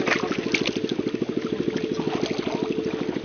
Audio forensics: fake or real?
real